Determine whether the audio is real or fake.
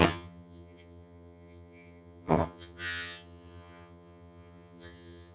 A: fake